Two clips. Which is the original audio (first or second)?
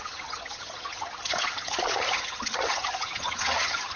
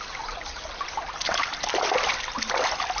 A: second